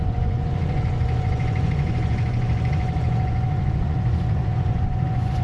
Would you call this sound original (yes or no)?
no